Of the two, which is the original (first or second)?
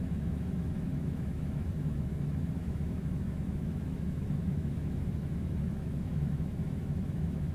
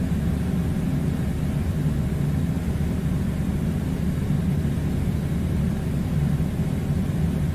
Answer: second